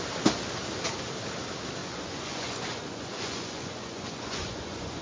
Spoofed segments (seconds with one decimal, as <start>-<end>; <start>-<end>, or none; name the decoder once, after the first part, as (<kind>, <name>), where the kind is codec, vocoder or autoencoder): 1.8-5.0 (vocoder, Vocos)